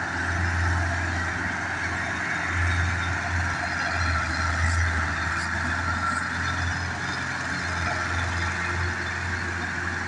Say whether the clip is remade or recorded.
recorded